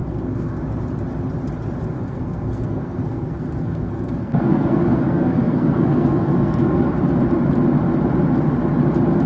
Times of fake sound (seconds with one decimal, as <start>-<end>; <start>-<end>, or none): 0.0-0.6; 1.9-6.9